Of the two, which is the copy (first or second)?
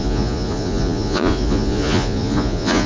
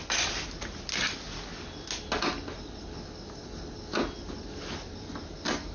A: first